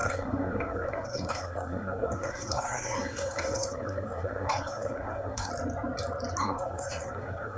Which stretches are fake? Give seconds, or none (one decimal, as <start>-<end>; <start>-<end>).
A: 0.0-5.5; 6.4-7.6